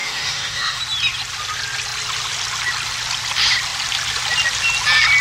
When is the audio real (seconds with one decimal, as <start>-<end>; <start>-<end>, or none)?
0.8-5.2